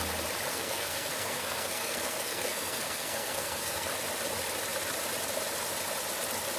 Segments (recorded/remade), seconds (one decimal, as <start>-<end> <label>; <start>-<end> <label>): 0.0-0.5 recorded; 0.5-3.9 remade; 3.9-6.6 recorded